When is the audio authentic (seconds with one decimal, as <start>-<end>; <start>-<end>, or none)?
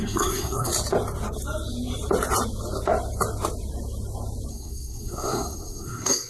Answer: 0.7-4.5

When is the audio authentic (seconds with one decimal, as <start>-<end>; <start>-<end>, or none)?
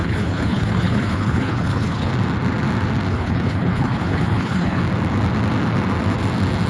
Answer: 2.1-3.1; 4.8-6.7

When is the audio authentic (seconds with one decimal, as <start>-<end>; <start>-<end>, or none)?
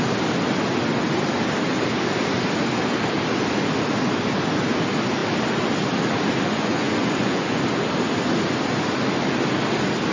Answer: 0.0-6.5; 7.6-10.1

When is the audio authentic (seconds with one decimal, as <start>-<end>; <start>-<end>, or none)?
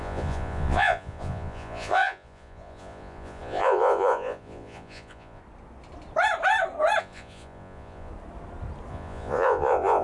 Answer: 5.4-7.0; 8.1-8.9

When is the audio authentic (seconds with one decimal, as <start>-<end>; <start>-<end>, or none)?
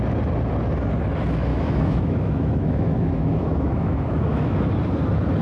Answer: 0.0-1.5; 4.6-5.4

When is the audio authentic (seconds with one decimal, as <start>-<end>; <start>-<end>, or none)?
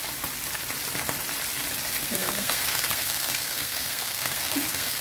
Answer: 0.0-2.0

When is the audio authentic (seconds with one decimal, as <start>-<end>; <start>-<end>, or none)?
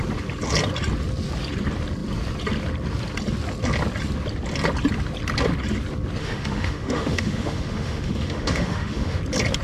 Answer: 0.0-6.2; 9.2-9.6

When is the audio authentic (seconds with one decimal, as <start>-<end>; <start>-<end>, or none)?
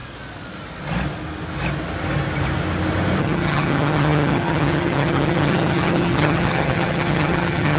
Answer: 0.0-3.2